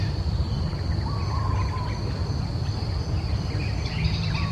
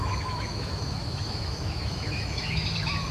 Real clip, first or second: first